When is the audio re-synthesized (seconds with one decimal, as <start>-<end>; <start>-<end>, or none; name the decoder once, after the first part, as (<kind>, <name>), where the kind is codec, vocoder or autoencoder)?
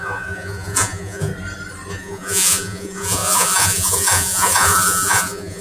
0.0-1.3 (vocoder, Vocos); 1.9-5.6